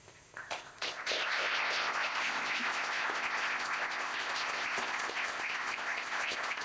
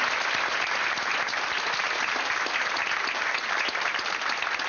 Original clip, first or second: second